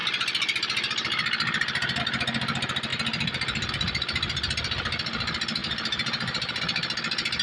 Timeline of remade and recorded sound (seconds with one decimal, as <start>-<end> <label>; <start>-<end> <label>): 0.0-5.6 recorded; 5.6-6.6 remade; 6.6-7.4 recorded